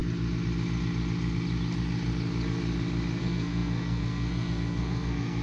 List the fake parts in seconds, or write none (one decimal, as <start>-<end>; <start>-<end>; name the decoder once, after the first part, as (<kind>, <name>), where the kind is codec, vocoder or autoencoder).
3.2-5.4 (codec, SNAC)